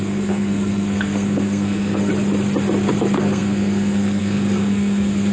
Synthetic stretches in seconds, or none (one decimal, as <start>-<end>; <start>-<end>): 0.0-2.1; 2.9-5.3